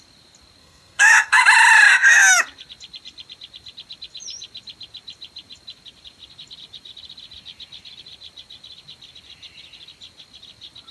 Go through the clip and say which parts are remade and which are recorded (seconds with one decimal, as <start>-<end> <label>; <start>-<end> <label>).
0.0-0.6 recorded; 0.6-1.4 remade; 1.4-10.9 recorded